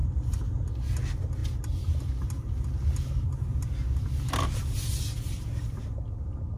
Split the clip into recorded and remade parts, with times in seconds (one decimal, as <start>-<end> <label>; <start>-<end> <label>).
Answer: 0.0-6.6 recorded